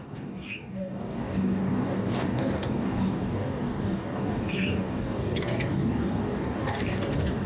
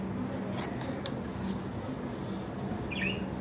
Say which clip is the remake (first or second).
first